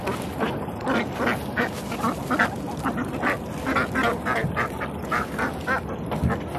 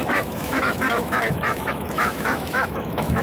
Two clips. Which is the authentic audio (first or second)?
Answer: first